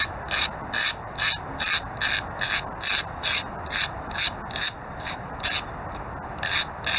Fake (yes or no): no